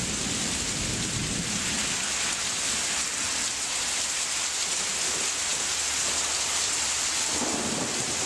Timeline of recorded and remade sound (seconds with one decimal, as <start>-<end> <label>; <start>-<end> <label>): 0.0-8.3 recorded